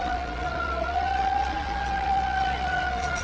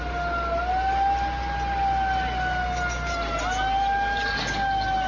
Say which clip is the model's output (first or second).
first